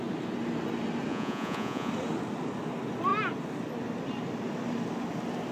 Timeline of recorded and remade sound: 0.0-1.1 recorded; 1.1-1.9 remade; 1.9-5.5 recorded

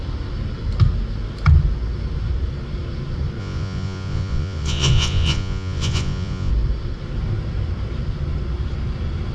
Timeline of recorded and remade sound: 0.0-3.4 recorded; 3.4-6.5 remade; 6.5-9.3 recorded